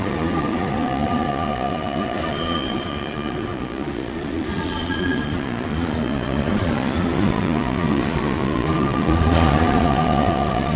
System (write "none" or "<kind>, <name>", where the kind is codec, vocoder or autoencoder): vocoder, Vocos